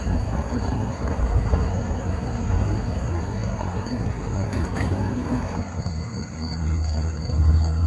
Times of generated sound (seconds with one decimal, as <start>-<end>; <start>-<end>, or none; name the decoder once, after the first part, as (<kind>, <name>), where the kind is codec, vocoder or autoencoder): 0.0-7.9 (codec, SNAC)